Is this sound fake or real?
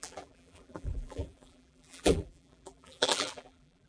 fake